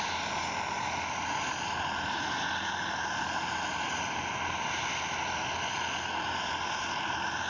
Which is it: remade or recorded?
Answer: recorded